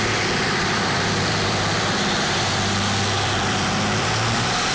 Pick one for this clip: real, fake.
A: fake